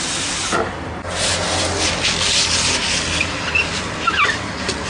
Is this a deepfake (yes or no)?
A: no